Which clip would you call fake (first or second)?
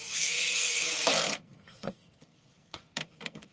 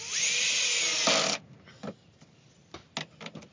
first